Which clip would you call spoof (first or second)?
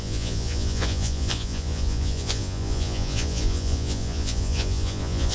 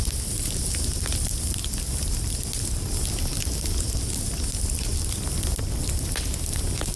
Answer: first